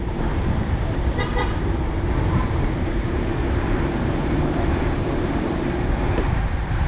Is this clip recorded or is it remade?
remade